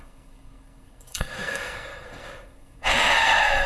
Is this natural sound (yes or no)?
no